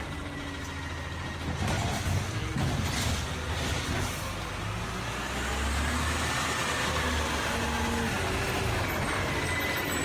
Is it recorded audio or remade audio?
recorded